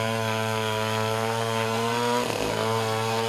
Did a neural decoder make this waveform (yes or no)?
yes